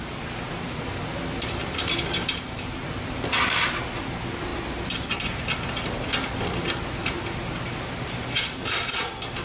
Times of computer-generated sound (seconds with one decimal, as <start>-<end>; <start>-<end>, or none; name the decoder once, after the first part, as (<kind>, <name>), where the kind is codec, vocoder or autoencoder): none